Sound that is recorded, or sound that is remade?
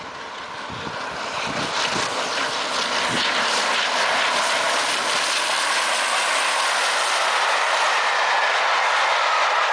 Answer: recorded